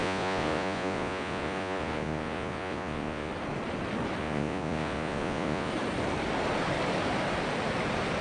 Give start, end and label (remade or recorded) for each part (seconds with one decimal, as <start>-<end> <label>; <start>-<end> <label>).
0.0-3.3 remade; 3.3-4.2 recorded; 4.2-5.7 remade; 5.7-8.2 recorded